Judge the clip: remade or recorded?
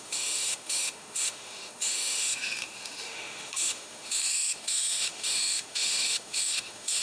remade